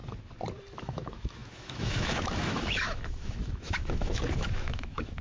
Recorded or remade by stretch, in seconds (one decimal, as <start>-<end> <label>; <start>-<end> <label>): 0.0-0.8 recorded; 0.8-5.2 remade

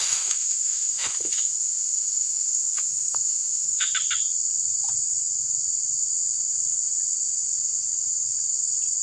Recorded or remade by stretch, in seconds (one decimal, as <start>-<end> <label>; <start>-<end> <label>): 0.0-3.9 remade; 3.9-9.0 recorded

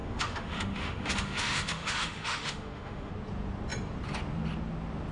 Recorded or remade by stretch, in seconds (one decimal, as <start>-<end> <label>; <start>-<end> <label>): 0.0-3.1 remade; 3.1-5.1 recorded

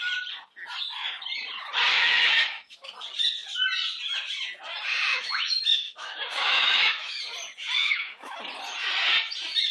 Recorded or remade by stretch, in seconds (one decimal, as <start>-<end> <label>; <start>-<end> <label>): 0.0-1.9 recorded; 1.9-2.9 remade; 2.9-5.1 recorded; 5.1-7.2 remade; 7.2-7.8 recorded; 7.8-8.4 remade; 8.4-9.7 recorded

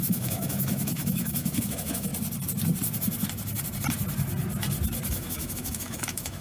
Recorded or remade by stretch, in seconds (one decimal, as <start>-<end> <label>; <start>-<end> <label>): 0.0-2.1 remade; 2.1-5.1 recorded; 5.1-6.4 remade

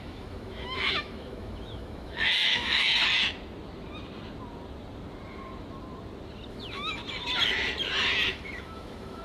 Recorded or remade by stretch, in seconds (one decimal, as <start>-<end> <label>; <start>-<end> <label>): 0.0-2.9 remade; 2.9-6.5 recorded; 6.5-7.0 remade; 7.0-8.3 recorded; 8.3-9.2 remade